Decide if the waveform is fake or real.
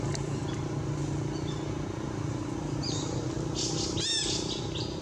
real